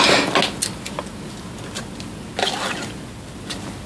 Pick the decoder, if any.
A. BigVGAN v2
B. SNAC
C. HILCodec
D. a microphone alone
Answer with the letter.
D